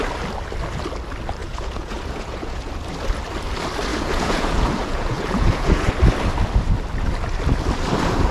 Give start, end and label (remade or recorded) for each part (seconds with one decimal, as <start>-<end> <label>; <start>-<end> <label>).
0.0-1.4 recorded; 1.4-2.7 remade; 2.7-3.9 recorded; 3.9-5.9 remade; 5.9-8.3 recorded